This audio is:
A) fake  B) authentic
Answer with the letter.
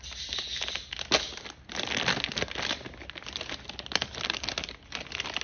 B